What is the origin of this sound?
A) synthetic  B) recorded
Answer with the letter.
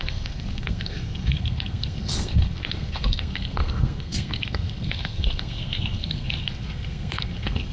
A